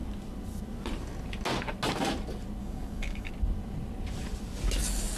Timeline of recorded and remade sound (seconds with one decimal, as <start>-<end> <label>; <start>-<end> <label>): 0.0-2.6 recorded; 2.6-3.3 remade; 3.3-5.2 recorded